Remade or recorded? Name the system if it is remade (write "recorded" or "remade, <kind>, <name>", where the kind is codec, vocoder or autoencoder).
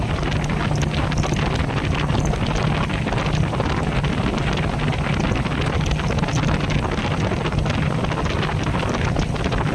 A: recorded